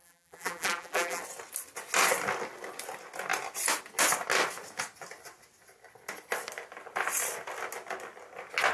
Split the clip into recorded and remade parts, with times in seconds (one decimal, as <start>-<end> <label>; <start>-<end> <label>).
0.0-1.2 remade; 1.2-8.7 recorded